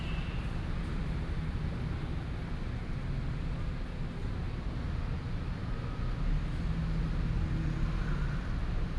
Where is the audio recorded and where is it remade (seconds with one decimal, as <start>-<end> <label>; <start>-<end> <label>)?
0.0-9.0 recorded